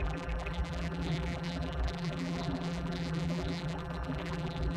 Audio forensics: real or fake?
fake